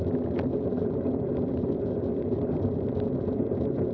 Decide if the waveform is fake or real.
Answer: real